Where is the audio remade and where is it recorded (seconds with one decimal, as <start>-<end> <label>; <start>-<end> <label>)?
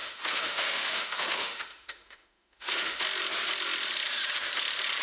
0.0-3.0 remade; 3.0-5.0 recorded